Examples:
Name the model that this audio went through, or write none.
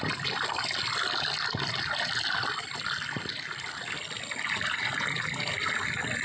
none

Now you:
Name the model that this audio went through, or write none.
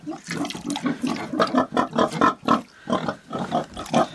none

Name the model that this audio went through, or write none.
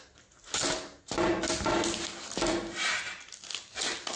none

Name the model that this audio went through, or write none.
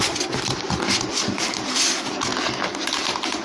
none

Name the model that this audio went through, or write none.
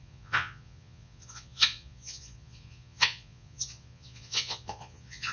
vocoder, Vocos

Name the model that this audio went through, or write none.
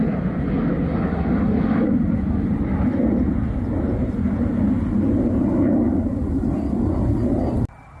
none